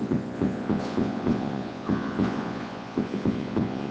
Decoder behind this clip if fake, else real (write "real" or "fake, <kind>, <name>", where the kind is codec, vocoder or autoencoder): fake, vocoder, Vocos